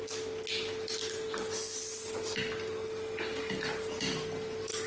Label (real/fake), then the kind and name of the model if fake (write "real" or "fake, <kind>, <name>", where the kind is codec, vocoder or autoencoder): real